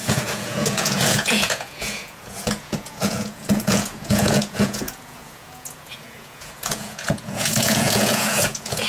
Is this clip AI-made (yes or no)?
yes